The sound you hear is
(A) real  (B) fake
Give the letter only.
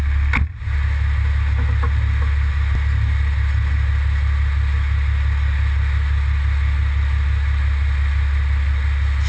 A